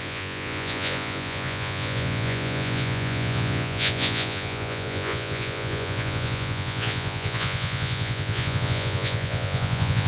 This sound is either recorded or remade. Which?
remade